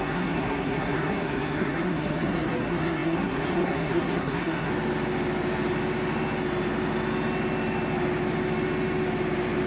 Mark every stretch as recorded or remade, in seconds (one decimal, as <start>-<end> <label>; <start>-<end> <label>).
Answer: 0.0-4.7 remade; 4.7-9.7 recorded